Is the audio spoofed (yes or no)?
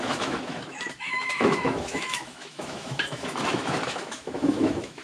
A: yes